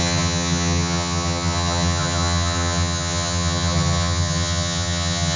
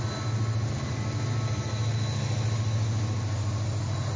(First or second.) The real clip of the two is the second